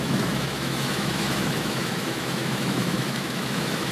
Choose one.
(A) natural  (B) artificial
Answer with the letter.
B